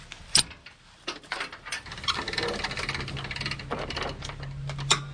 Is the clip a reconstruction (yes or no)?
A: no